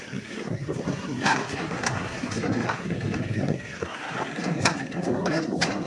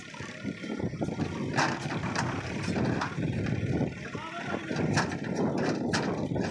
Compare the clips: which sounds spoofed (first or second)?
first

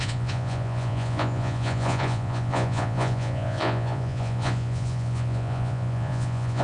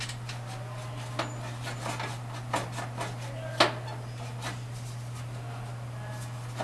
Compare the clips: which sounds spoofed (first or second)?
first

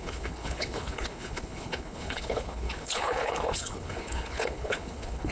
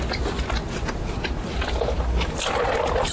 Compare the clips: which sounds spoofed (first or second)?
first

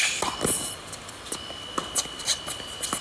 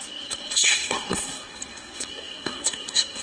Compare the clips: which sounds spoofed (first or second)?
second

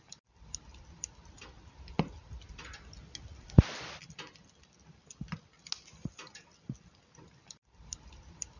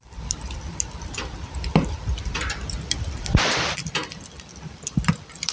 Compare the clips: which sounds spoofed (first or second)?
second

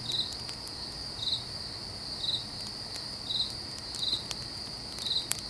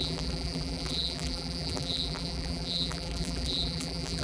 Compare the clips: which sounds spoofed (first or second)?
second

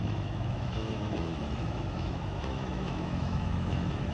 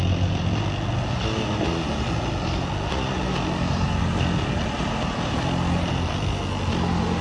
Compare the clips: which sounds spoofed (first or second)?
first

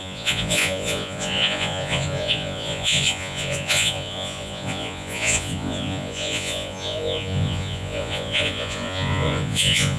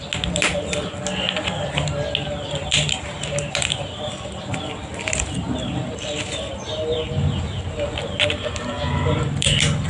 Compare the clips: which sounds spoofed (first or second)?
first